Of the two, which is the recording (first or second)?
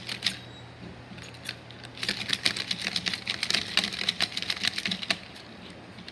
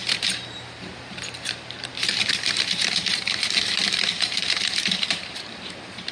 first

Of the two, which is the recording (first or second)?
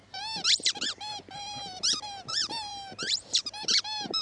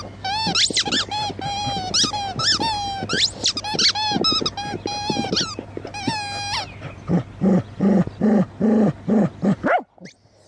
second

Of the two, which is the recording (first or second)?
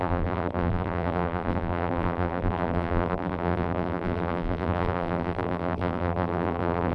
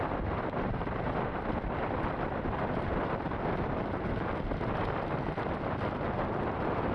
second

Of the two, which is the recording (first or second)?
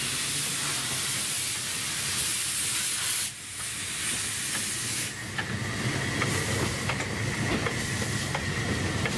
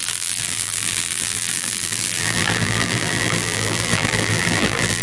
first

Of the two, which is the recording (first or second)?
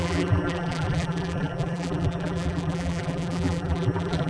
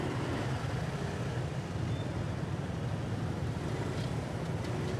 second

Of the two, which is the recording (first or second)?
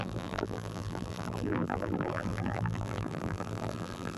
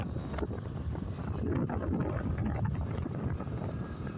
second